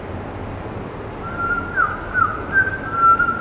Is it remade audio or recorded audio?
recorded